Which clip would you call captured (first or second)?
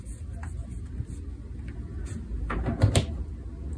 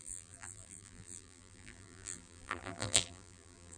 first